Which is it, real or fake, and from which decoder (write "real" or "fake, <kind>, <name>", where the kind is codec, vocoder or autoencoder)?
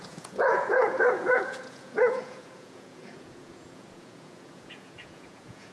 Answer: fake, vocoder, Vocos